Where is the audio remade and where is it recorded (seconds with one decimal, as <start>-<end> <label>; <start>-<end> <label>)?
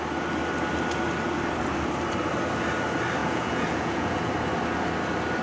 0.0-3.2 recorded; 3.2-4.3 remade; 4.3-5.4 recorded